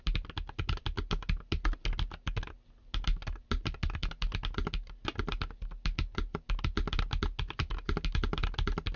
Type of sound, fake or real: real